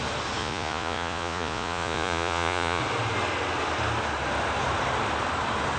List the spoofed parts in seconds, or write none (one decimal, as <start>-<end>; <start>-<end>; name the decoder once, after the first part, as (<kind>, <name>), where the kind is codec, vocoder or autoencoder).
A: 0.4-2.8 (vocoder, Vocos)